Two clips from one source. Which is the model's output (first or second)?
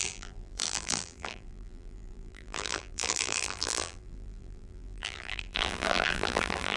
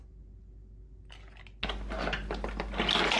first